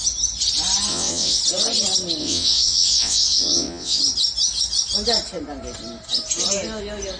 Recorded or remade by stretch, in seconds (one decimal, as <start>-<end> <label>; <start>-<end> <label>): 0.0-0.9 recorded; 0.9-1.4 remade; 1.4-2.2 recorded; 2.2-4.0 remade; 4.0-7.2 recorded